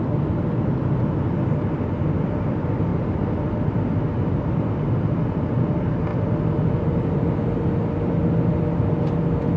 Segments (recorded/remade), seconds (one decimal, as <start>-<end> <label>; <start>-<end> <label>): 0.0-9.6 recorded